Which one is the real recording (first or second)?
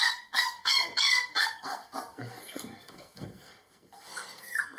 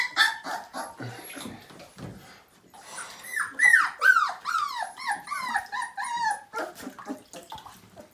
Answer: second